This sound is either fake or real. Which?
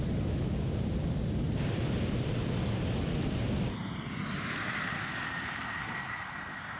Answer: real